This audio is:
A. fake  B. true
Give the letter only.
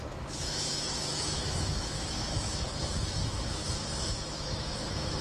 A